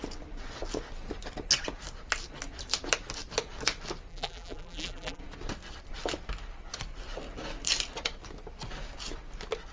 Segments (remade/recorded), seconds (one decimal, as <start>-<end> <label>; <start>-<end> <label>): 0.0-4.1 recorded; 4.1-5.2 remade; 5.2-9.7 recorded